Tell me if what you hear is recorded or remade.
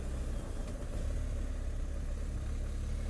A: recorded